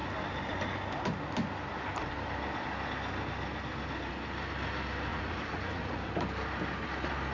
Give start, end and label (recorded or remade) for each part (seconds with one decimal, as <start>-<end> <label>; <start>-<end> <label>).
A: 0.0-5.1 recorded; 5.1-6.1 remade; 6.1-7.3 recorded